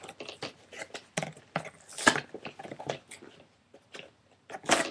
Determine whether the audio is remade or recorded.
recorded